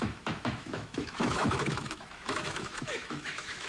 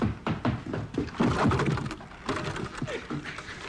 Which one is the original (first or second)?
second